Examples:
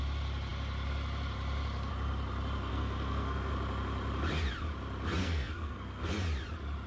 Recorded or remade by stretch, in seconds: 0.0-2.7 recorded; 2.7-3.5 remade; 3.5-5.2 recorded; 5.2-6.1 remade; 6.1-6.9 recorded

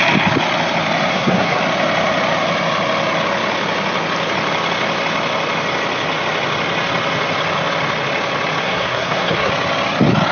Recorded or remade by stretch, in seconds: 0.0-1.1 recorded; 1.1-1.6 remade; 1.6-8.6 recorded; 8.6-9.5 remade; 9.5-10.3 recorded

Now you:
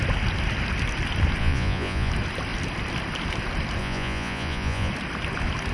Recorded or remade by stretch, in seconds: 0.0-1.4 recorded; 1.4-2.1 remade; 2.1-3.8 recorded; 3.8-4.9 remade; 4.9-5.7 recorded

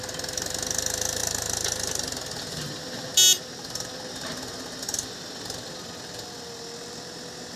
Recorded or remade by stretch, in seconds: 0.0-7.6 recorded

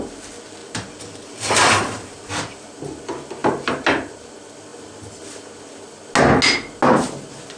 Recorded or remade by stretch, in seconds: 0.0-0.6 recorded; 0.6-2.3 remade; 2.3-7.6 recorded

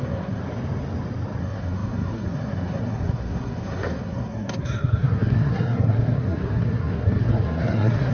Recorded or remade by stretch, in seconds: 0.0-0.4 remade; 0.4-1.4 recorded; 1.4-8.1 remade